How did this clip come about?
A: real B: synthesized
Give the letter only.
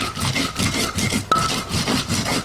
A